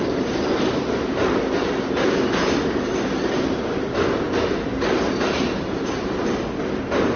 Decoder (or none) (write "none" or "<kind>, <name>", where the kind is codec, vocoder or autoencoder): none